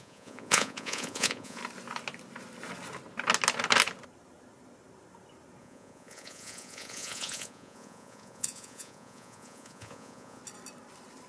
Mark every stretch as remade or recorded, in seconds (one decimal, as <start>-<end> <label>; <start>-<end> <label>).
0.0-1.6 remade; 1.6-5.6 recorded; 5.6-10.4 remade; 10.4-11.3 recorded